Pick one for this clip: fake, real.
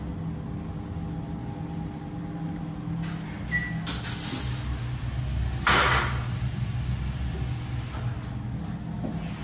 real